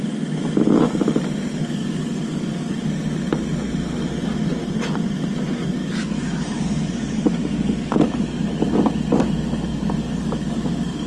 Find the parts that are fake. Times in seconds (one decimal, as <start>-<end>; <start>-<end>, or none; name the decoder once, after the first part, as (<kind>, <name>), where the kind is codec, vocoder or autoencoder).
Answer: 1.6-2.6 (codec, DAC); 5.8-8.6; 9.7-11.1

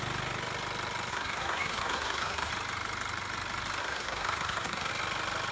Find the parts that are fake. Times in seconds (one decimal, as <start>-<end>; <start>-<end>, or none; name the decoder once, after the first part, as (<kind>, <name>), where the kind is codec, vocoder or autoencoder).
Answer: 1.1-2.5 (codec, SNAC); 3.8-4.9

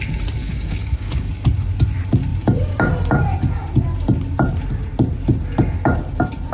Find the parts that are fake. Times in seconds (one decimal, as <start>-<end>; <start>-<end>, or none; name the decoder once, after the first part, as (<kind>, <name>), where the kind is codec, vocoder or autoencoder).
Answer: 0.4-1.3 (codec, DAC)